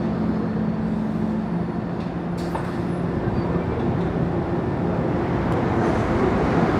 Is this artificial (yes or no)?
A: no